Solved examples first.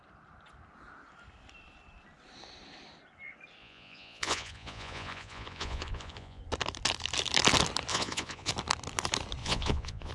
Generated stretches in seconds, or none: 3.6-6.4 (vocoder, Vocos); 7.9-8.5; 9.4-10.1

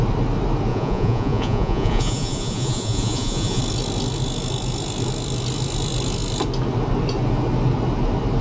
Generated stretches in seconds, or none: 0.7-3.6 (vocoder, Vocos)

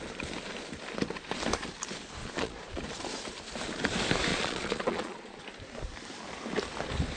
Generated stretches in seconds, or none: 2.2-2.7 (vocoder, Vocos); 4.3-5.4